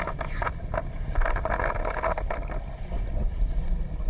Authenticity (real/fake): real